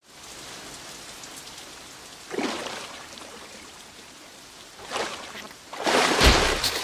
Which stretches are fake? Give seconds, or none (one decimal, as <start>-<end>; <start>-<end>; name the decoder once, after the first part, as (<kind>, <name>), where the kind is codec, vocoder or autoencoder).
2.6-6.8 (vocoder, BigVGAN v2)